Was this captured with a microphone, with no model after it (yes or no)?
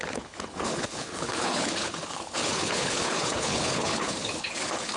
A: no